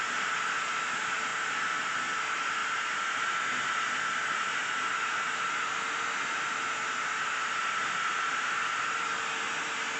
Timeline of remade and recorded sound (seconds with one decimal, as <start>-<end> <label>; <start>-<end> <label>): 0.0-10.0 recorded